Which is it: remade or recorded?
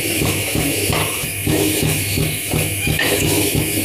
remade